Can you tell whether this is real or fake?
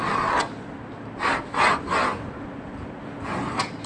real